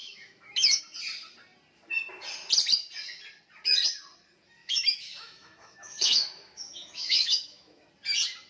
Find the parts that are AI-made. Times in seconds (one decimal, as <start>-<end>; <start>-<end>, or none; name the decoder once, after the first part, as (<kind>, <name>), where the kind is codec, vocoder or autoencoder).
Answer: 0.0-0.8 (autoencoder, DAC-VAE); 4.6-7.9